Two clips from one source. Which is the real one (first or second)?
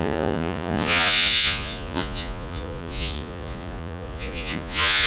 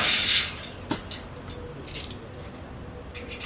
second